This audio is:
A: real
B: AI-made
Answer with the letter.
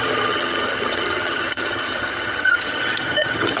B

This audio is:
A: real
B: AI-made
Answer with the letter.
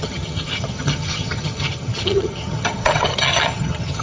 B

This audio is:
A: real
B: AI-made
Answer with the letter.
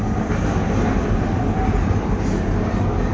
A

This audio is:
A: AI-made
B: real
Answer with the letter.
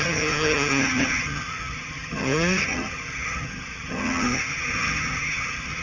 A